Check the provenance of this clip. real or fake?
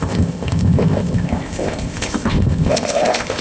fake